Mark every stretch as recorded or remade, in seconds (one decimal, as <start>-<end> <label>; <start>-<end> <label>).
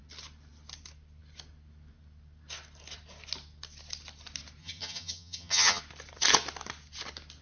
0.0-4.6 recorded; 4.6-5.8 remade; 5.8-7.4 recorded